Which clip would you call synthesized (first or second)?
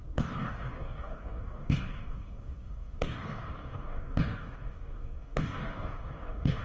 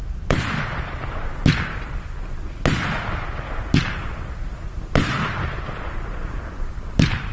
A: first